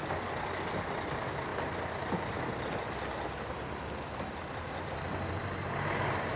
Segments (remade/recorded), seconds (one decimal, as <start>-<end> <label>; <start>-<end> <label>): 0.0-6.4 recorded